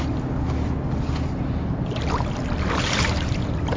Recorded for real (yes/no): yes